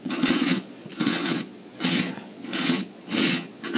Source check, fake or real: fake